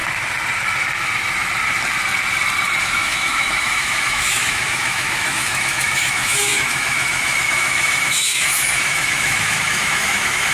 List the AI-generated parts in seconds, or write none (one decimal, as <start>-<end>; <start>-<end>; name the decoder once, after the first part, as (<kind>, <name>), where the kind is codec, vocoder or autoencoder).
2.8-10.5 (autoencoder, DAC-VAE)